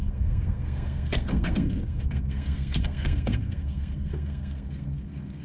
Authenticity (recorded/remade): remade